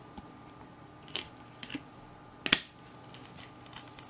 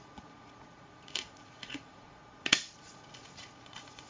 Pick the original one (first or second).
first